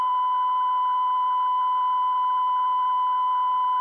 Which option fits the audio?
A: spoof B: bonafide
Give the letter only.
B